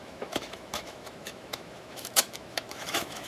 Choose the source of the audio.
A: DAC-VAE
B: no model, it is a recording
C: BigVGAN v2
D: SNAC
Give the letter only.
A